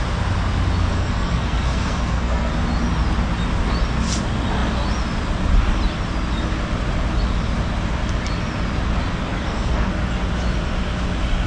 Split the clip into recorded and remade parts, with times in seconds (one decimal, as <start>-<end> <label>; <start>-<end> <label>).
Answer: 0.0-0.9 recorded; 0.9-2.5 remade; 2.5-9.3 recorded; 9.3-9.9 remade; 9.9-11.5 recorded